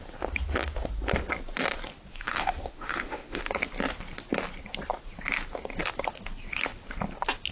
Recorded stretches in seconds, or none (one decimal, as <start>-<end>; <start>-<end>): 0.0-2.1; 3.4-7.5